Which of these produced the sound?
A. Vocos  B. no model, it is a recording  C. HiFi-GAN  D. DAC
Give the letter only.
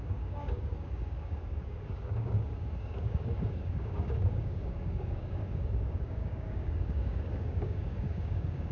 D